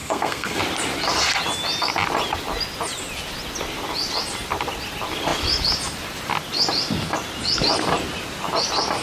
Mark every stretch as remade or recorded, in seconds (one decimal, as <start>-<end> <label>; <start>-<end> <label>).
0.0-0.6 remade; 0.6-9.0 recorded